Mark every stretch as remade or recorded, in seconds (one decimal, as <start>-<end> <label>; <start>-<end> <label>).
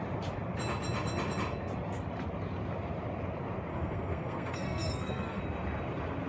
0.0-3.7 recorded; 3.7-5.4 remade; 5.4-6.3 recorded